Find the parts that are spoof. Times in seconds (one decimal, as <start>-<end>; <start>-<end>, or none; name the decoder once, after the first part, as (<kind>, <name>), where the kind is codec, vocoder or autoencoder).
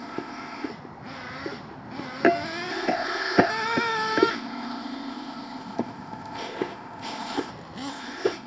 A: 0.0-0.7 (codec, ZipCodec); 2.7-3.5; 4.3-7.5; 7.9-8.5